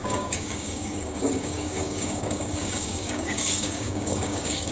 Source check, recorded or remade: remade